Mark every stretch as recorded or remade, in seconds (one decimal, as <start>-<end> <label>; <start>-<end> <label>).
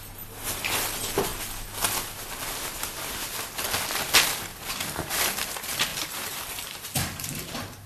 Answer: 0.0-4.5 recorded; 4.5-5.2 remade; 5.2-5.9 recorded; 5.9-7.9 remade